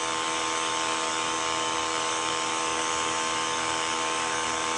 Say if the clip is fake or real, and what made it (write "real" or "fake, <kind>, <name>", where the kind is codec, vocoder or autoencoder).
fake, codec, DAC